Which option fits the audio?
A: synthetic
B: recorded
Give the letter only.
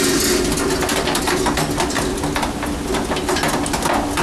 B